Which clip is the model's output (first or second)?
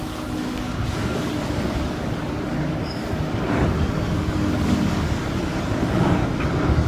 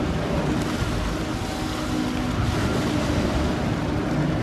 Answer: first